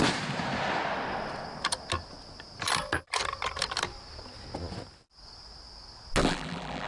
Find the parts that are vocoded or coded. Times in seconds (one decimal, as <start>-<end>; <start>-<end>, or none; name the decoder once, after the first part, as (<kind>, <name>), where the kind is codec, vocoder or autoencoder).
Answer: 6.2-6.9 (vocoder, BigVGAN v2)

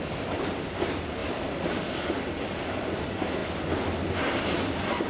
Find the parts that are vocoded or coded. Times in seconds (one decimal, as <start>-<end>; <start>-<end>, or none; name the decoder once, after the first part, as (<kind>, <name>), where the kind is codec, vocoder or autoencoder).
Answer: 1.2-1.8 (vocoder, BigVGAN v2); 3.4-4.1

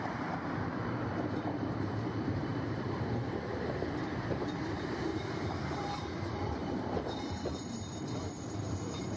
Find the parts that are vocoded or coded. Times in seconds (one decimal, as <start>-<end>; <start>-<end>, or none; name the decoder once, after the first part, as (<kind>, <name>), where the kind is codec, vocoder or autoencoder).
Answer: 0.0-9.2 (vocoder, BigVGAN v2)

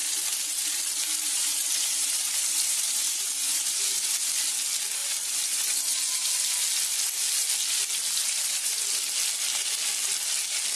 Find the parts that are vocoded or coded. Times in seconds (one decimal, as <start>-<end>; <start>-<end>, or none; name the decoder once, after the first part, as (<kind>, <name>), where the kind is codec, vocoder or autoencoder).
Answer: 0.0-4.3 (vocoder, BigVGAN v2); 5.0-5.8; 8.2-8.8

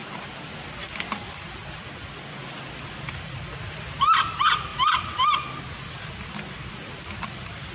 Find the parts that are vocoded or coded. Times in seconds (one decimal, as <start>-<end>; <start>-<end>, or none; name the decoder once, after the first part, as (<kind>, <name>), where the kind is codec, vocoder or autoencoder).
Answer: 0.0-0.5 (vocoder, BigVGAN v2)

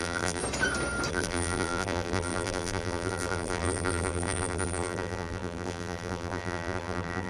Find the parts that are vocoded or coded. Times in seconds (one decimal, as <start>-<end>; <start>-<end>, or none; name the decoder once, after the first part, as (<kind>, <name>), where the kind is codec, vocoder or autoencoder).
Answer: 0.0-0.4 (vocoder, BigVGAN v2); 1.1-7.3